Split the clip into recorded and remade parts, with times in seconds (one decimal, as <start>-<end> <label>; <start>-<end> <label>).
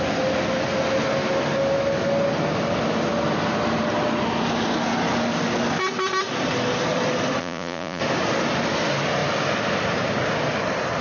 0.0-7.4 recorded; 7.4-8.0 remade; 8.0-11.0 recorded